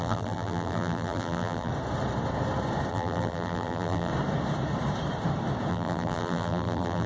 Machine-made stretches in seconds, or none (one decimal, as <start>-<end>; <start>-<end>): 0.0-1.7; 2.9-4.1; 5.7-7.1